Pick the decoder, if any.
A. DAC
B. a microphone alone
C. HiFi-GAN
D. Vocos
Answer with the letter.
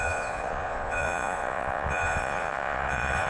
D